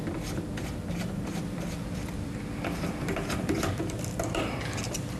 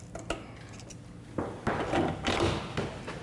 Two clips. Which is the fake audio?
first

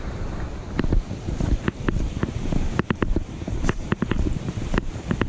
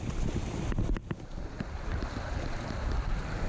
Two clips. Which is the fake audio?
first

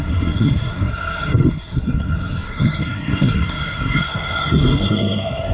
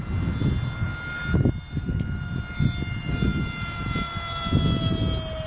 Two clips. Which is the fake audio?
first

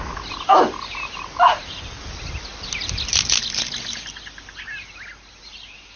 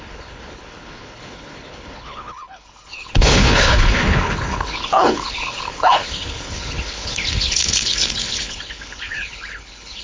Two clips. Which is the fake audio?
second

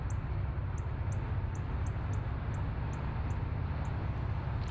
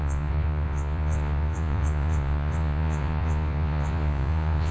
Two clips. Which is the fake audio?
second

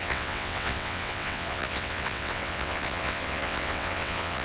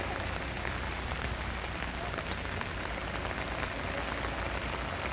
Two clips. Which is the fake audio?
first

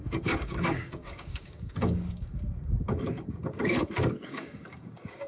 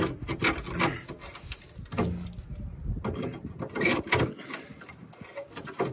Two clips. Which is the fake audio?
first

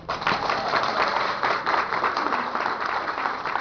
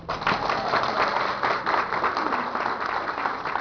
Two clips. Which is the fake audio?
first